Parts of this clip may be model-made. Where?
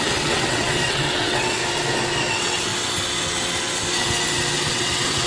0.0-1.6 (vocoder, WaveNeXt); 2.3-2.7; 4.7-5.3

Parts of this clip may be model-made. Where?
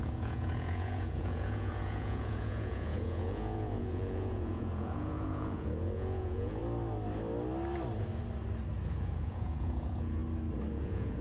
0.0-6.6 (vocoder, Vocos); 8.9-10.2; 10.7-11.2